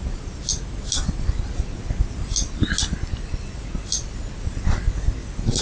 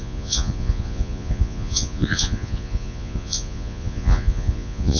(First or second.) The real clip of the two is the first